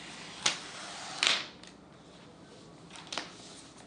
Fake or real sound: real